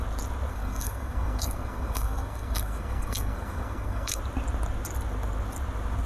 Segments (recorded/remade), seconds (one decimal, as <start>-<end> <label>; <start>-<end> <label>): 0.0-0.5 recorded; 0.5-4.2 remade; 4.2-6.1 recorded